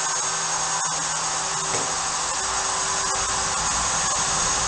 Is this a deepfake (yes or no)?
no